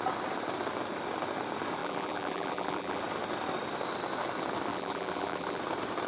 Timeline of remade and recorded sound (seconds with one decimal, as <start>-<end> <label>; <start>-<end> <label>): 0.0-1.8 recorded; 1.8-3.0 remade; 3.0-4.7 recorded; 4.7-5.6 remade; 5.6-6.1 recorded